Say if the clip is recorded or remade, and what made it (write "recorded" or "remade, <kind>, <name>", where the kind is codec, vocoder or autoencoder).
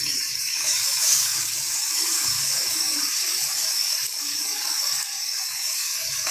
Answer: remade, codec, DAC